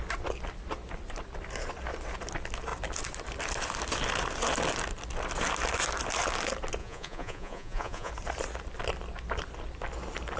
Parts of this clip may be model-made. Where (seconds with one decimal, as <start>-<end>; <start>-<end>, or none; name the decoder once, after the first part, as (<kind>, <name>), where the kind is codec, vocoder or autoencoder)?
6.8-8.1 (vocoder, Vocos)